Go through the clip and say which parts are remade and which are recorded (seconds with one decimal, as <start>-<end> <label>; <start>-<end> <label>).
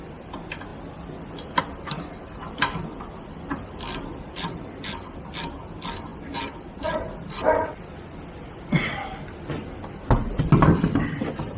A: 0.0-11.6 recorded